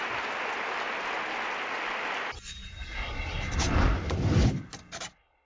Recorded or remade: recorded